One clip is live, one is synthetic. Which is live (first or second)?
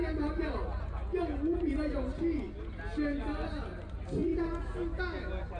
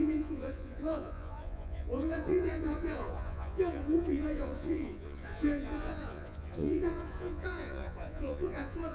first